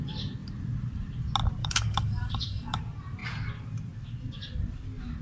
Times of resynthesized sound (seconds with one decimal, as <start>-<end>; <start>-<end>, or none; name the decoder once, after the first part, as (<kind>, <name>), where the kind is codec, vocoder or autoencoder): 1.6-2.8 (codec, DAC)